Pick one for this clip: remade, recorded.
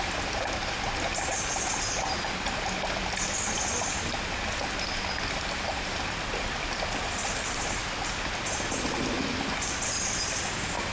recorded